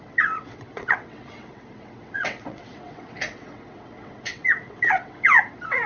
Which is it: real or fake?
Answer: fake